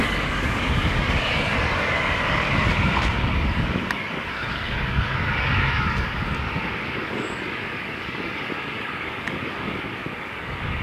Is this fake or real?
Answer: fake